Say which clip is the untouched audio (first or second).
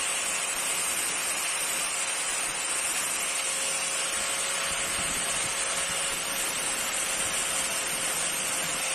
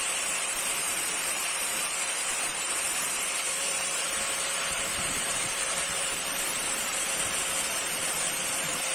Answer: first